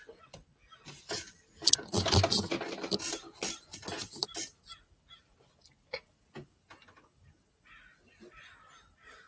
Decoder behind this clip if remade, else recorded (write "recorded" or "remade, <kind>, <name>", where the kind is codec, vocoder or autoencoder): recorded